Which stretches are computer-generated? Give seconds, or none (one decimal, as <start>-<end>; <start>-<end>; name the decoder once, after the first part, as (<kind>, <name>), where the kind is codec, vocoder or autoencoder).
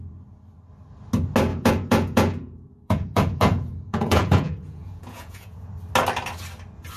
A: 1.5-5.7 (vocoder, Vocos)